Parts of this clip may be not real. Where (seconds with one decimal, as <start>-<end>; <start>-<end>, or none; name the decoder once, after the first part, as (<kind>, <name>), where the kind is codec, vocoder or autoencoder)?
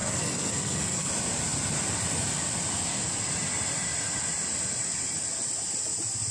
0.0-1.1 (codec, SNAC)